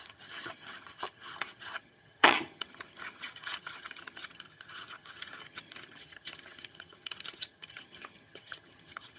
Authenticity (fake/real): fake